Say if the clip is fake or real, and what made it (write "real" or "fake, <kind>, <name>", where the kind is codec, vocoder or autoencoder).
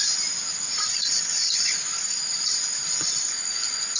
real